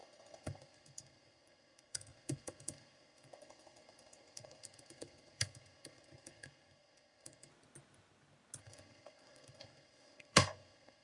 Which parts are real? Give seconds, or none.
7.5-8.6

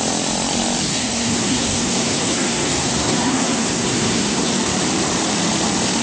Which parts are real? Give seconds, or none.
0.0-0.9; 4.5-6.0

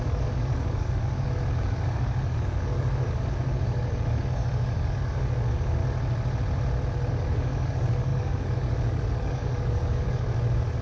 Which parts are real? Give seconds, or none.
5.8-7.1

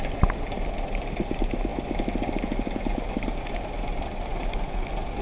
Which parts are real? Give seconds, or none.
0.0-5.2

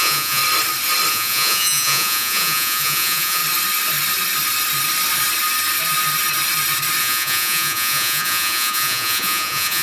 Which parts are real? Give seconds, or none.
0.4-1.1; 3.4-7.0